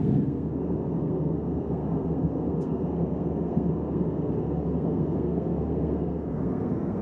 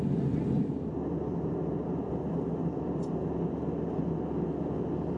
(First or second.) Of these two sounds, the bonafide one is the second